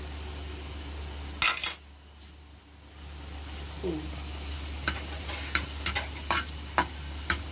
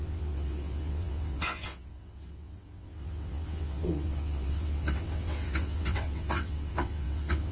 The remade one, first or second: second